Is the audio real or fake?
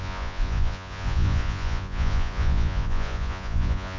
fake